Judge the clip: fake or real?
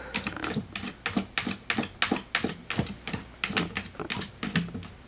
real